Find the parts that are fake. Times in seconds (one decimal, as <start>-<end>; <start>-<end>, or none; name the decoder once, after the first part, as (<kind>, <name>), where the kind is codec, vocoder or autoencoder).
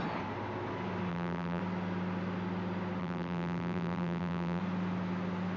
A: 1.1-1.6 (vocoder, BigVGAN v2); 3.0-4.6